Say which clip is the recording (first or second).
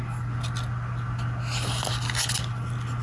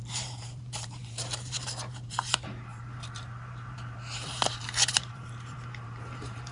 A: first